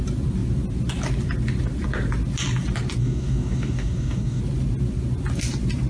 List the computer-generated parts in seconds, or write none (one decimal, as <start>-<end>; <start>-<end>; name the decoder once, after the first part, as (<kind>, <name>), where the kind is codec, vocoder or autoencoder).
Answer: 3.0-4.4 (codec, DAC)